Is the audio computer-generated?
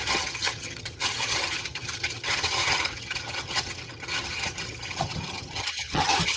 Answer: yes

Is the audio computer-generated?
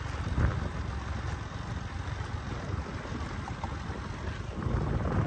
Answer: no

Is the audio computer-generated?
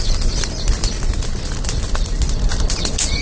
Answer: no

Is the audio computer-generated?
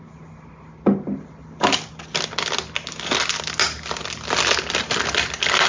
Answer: no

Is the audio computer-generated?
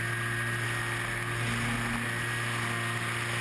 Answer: no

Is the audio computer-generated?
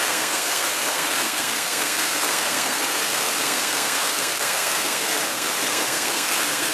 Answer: yes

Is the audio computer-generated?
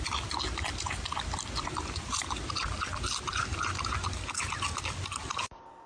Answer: no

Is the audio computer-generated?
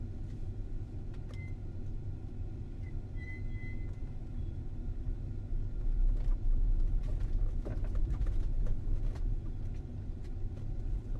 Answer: no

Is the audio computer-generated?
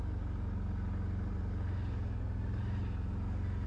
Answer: no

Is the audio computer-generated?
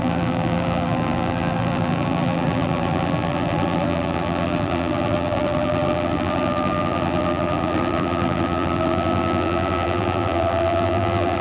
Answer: yes